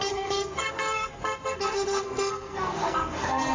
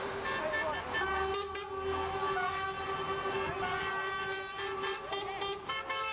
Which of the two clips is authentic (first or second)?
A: second